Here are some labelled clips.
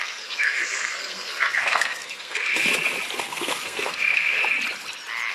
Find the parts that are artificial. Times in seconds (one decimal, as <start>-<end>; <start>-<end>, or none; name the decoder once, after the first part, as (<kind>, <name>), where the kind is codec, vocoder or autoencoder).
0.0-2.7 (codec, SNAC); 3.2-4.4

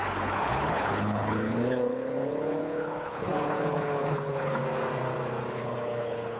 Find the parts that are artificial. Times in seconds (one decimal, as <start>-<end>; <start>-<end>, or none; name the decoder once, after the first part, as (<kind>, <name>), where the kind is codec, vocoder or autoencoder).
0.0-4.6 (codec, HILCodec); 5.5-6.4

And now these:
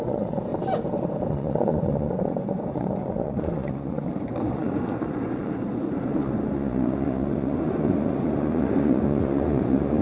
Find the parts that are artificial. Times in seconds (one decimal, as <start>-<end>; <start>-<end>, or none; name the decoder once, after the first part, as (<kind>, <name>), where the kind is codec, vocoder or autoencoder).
0.0-0.5 (vocoder, Vocos); 1.3-10.0

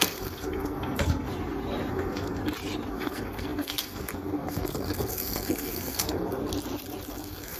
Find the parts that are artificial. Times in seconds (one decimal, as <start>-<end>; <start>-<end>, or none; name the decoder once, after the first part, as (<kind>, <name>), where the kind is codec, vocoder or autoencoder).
0.0-1.3 (codec, SNAC); 1.9-2.4; 2.9-6.4; 7.1-7.6